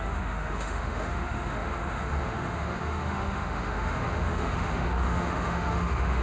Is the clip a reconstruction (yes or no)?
yes